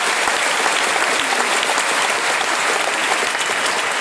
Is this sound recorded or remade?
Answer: recorded